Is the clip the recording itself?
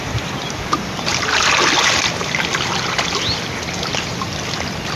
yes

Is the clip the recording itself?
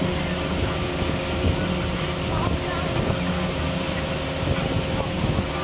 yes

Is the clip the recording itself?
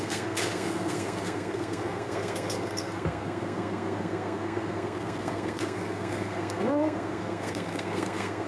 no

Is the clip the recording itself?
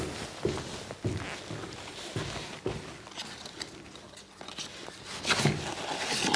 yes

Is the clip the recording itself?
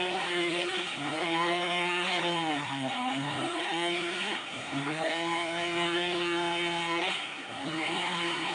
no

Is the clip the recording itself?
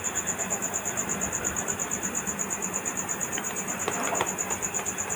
yes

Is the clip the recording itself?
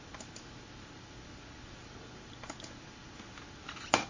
yes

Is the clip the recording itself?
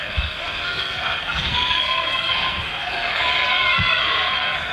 no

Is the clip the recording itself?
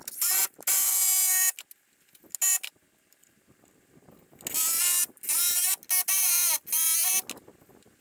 yes